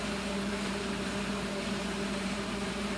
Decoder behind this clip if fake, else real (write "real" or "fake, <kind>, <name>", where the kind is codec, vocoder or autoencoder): fake, vocoder, BigVGAN v2